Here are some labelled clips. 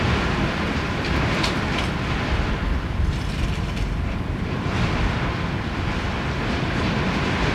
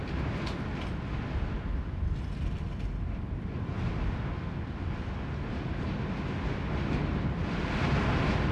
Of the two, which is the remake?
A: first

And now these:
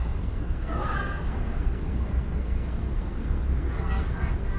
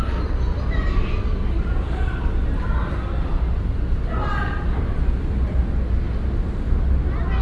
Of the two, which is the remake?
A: first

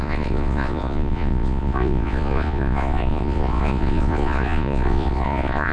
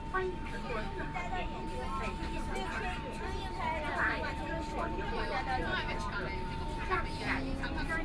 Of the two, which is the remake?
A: first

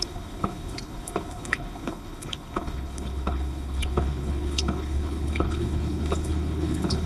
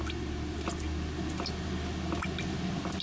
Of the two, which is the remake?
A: first